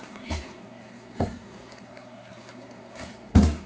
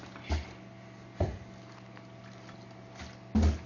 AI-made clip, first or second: first